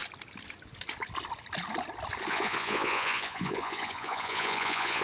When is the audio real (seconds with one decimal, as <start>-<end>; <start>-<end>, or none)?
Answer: 0.0-2.3